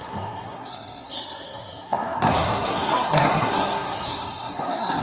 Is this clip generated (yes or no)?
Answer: yes